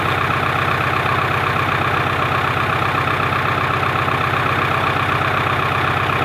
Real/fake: real